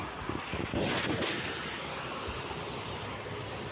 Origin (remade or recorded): recorded